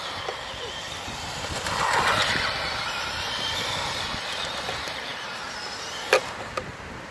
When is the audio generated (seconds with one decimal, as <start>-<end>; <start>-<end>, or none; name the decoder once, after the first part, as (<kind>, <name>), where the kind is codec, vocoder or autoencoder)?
0.0-5.1 (vocoder, BigVGAN v2); 5.7-7.1